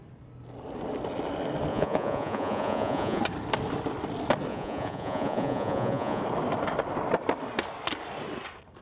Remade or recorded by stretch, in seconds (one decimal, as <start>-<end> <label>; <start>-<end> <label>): 0.0-1.7 recorded; 1.7-3.2 remade; 3.2-4.5 recorded; 4.5-6.2 remade; 6.2-8.8 recorded